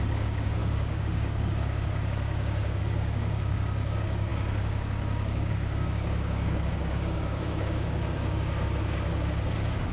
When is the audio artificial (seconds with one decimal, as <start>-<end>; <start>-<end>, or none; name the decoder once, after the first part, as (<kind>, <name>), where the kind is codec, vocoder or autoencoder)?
0.0-9.9 (codec, DAC)